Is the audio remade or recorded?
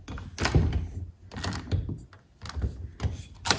recorded